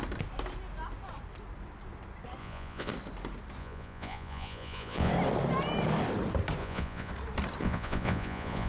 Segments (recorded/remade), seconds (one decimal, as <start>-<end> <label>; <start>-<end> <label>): 0.0-2.4 recorded; 2.4-2.9 remade; 2.9-3.6 recorded; 3.6-5.1 remade; 5.1-6.6 recorded; 6.6-7.1 remade; 7.1-7.6 recorded; 7.6-8.7 remade